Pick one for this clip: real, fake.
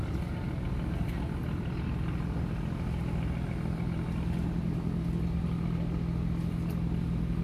real